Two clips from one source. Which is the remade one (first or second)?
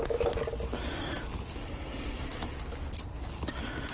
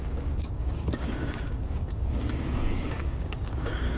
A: second